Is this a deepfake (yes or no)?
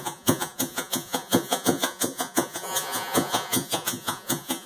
yes